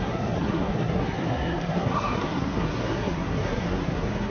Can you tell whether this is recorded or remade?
remade